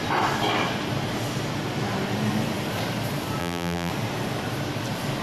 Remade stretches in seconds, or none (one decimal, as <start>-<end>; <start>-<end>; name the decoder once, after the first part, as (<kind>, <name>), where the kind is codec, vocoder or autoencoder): 3.4-3.9 (vocoder, BigVGAN v2)